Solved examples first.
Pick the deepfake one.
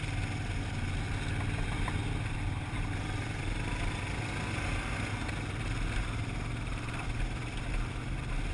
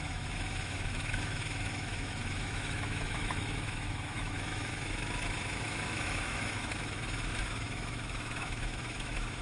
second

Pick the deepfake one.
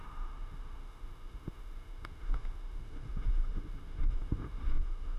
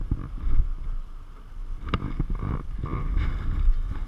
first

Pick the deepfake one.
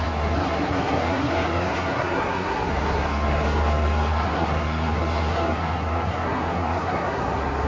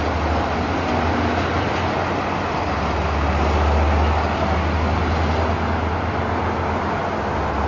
first